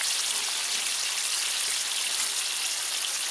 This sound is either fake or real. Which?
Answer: real